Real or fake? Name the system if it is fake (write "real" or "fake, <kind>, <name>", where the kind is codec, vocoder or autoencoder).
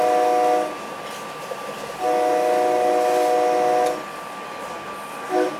real